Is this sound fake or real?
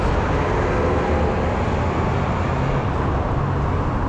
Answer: real